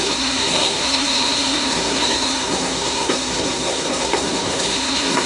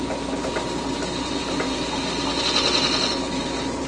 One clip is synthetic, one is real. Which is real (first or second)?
second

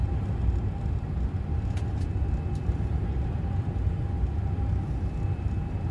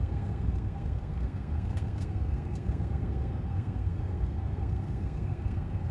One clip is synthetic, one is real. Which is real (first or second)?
first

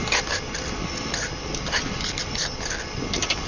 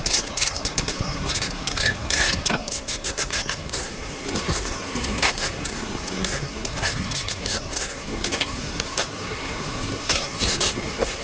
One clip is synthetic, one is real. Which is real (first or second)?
first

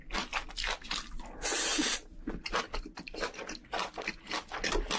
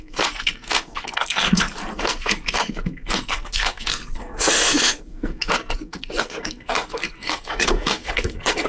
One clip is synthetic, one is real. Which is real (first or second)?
first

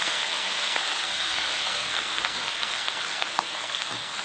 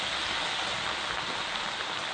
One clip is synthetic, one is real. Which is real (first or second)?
second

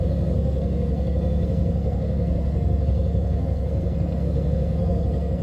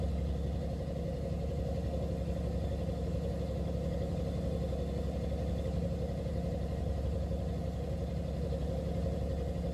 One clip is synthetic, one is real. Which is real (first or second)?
second